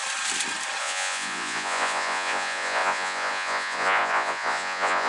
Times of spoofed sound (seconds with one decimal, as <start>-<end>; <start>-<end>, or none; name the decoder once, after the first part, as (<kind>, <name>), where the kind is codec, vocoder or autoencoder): 0.8-5.1 (vocoder, Vocos)